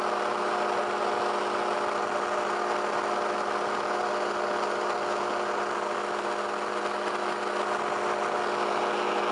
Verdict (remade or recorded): recorded